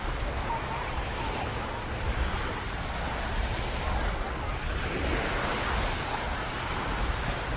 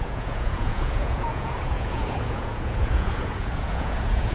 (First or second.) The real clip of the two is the first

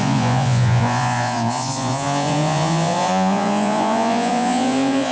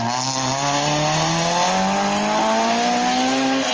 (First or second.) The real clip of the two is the second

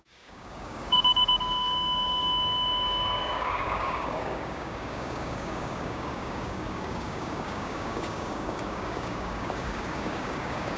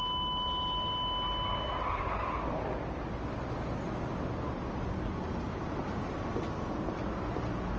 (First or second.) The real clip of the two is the second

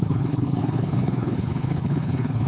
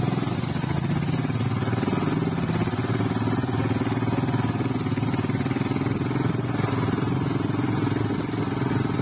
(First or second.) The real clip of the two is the second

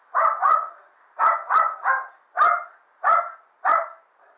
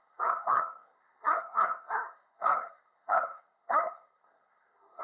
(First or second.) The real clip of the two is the first